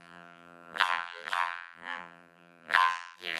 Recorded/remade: remade